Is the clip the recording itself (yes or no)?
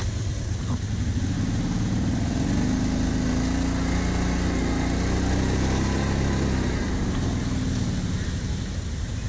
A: yes